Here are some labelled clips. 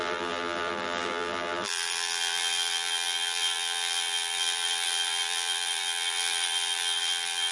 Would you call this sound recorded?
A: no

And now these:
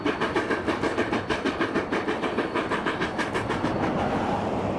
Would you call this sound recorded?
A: no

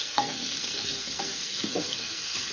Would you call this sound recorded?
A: no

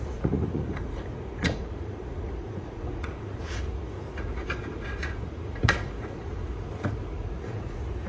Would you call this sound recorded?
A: no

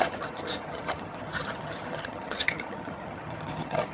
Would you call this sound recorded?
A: no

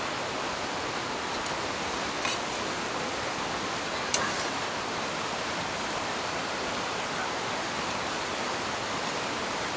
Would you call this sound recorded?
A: yes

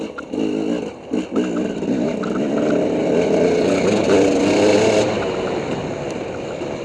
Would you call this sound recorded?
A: yes